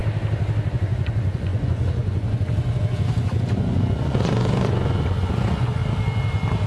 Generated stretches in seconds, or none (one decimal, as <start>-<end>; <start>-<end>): 0.7-5.8

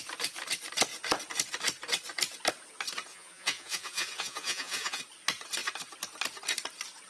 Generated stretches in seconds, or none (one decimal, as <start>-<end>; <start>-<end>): 3.1-5.0

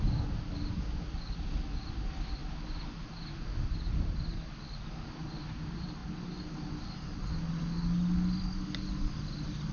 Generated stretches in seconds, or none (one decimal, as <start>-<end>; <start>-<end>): none

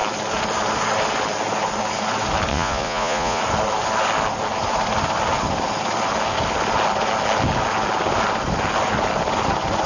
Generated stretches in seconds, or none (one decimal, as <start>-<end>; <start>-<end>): 2.5-3.4